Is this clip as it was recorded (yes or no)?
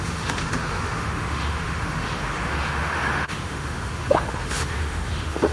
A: no